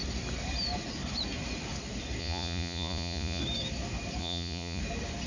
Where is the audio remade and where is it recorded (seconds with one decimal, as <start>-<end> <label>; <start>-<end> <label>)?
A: 0.0-2.2 recorded; 2.2-3.4 remade; 3.4-4.2 recorded; 4.2-4.8 remade; 4.8-5.3 recorded